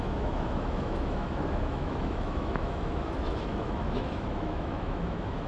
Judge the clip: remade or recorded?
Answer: remade